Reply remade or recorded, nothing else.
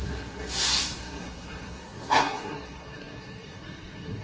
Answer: remade